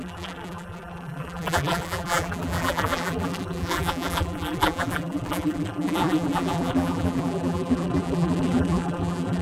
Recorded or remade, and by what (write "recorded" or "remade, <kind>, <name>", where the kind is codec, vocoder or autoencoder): remade, vocoder, BigVGAN v2